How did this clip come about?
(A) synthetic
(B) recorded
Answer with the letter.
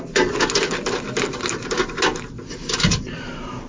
B